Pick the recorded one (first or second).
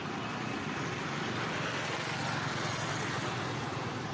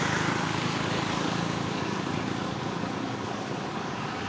first